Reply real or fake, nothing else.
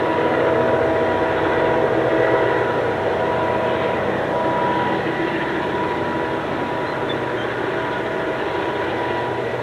real